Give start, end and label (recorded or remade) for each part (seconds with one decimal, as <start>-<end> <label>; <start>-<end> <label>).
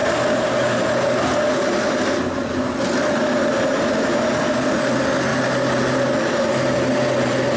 0.0-7.6 recorded